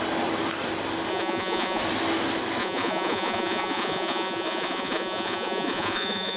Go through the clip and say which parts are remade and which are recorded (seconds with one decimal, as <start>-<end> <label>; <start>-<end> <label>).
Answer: 0.0-1.1 recorded; 1.1-1.8 remade; 1.8-2.6 recorded; 2.6-6.4 remade